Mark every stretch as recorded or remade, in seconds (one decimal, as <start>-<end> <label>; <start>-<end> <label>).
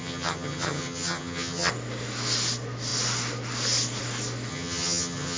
0.0-1.7 remade; 1.7-4.5 recorded; 4.5-5.4 remade